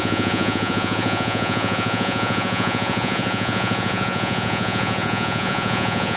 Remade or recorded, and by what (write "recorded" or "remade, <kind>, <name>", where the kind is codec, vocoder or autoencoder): remade, vocoder, Vocos